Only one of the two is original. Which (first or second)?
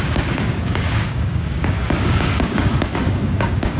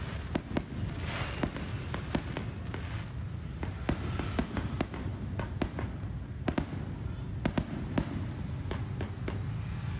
second